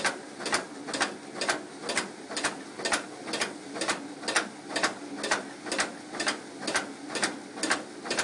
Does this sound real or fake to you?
real